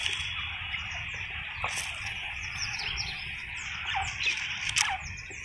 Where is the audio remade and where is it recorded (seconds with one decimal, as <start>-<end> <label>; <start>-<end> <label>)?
0.0-2.0 recorded; 2.0-3.5 remade; 3.5-5.4 recorded